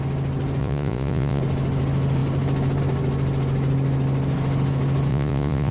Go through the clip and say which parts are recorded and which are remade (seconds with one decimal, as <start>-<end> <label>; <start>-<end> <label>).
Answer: 0.0-0.6 recorded; 0.6-1.4 remade; 1.4-5.1 recorded; 5.1-5.7 remade